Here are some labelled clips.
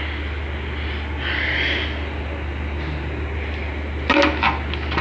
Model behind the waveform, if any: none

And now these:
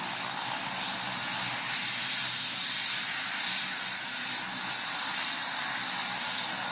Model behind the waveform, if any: none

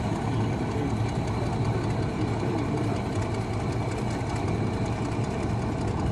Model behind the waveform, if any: none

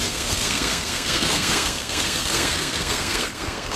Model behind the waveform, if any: codec, SNAC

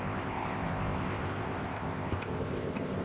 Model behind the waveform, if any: codec, ZipCodec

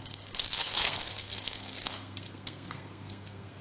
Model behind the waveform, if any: codec, SNAC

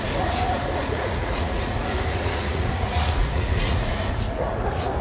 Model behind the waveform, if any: vocoder, Vocos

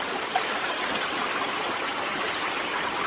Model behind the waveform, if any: none